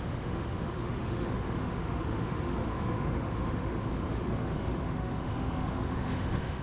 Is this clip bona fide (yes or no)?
no